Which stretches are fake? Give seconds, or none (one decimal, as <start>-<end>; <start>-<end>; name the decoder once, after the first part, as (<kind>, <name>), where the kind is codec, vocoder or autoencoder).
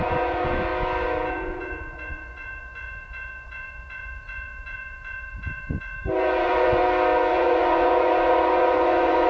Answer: 0.0-0.7 (vocoder, Vocos); 1.3-6.8; 7.3-9.3